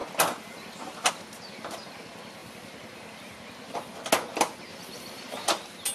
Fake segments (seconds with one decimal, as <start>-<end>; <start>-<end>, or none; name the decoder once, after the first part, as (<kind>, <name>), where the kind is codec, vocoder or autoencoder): 0.0-1.1 (vocoder, BigVGAN v2); 2.4-3.9; 4.7-5.5